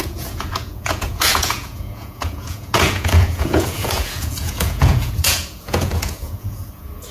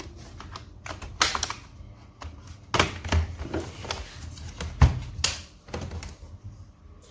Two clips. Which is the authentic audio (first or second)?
second